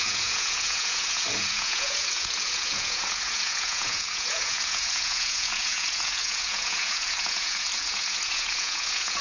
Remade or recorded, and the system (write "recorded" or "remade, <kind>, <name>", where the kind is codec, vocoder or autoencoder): remade, vocoder, Vocos